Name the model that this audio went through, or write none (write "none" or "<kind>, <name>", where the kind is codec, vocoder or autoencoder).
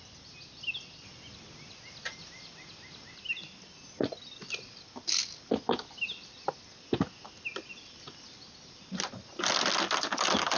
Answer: none